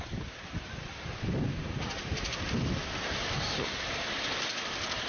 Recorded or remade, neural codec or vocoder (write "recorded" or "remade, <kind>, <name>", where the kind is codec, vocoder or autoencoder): recorded